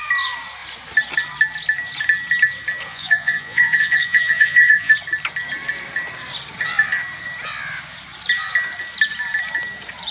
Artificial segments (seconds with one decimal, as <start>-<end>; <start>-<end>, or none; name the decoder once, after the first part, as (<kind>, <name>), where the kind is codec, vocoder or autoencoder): 2.9-4.9 (vocoder, Vocos)